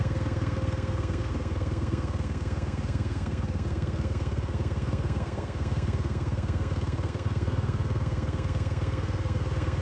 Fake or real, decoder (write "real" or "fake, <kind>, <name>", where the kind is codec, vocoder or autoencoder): fake, codec, SNAC